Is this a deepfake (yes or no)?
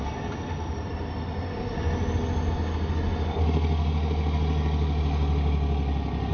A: no